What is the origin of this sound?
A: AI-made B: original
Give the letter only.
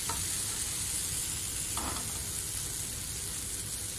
B